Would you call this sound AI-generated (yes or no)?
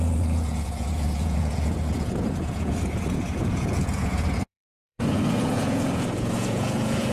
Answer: yes